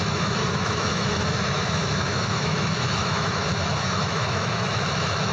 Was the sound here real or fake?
fake